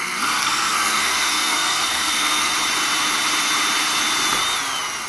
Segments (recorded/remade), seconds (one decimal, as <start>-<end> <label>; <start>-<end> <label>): 0.0-2.5 remade; 2.5-5.1 recorded